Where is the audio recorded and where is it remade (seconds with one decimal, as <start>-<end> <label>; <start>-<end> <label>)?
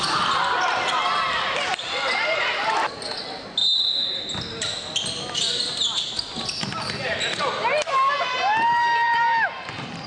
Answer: 0.0-10.1 recorded